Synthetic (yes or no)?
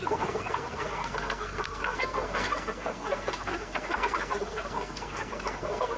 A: yes